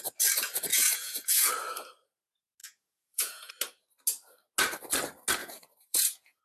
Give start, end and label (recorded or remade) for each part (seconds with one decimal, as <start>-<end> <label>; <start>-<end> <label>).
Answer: 0.0-0.7 recorded; 0.7-1.5 remade; 1.5-2.6 recorded; 2.6-3.5 remade; 3.5-5.4 recorded; 5.4-6.4 remade